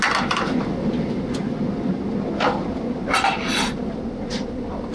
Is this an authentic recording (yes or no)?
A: yes